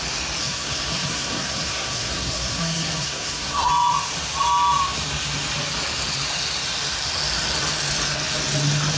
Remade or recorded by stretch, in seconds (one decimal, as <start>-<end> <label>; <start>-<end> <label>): 0.0-0.4 recorded; 0.4-3.7 remade; 3.7-9.0 recorded